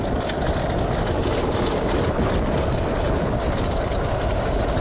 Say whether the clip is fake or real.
real